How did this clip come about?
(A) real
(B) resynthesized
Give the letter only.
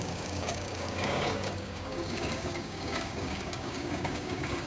B